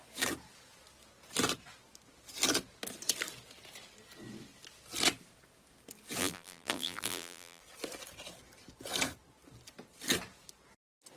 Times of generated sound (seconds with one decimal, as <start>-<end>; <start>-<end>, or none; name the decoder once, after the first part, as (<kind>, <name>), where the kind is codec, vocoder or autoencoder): 6.2-7.6 (vocoder, BigVGAN v2)

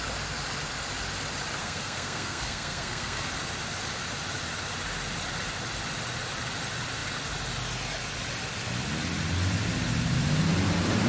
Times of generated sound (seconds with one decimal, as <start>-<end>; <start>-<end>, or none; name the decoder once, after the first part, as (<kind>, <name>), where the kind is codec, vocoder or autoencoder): 1.6-3.3 (codec, SNAC)

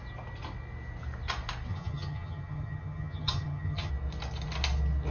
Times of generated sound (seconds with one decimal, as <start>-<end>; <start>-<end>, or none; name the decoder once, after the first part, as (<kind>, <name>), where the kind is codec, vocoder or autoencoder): 1.7-3.9 (vocoder, HiFi-GAN)

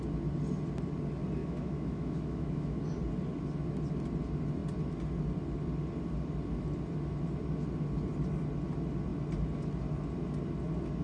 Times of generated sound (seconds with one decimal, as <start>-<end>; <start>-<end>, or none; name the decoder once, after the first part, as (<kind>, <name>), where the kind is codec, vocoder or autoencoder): 1.4-2.8 (autoencoder, DAC-VAE)